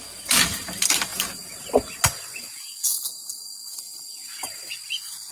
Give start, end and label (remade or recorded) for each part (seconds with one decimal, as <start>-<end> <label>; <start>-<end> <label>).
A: 0.0-5.3 recorded